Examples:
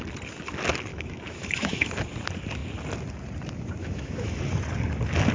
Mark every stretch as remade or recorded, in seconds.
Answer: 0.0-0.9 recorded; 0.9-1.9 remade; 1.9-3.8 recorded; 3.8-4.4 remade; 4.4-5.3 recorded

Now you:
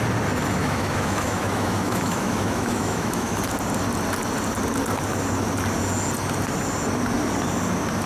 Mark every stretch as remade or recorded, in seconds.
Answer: 0.0-0.6 recorded; 0.6-3.4 remade; 3.4-8.1 recorded

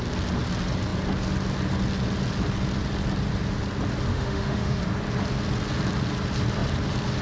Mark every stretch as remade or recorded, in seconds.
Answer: 0.0-4.1 recorded; 4.1-4.8 remade; 4.8-7.2 recorded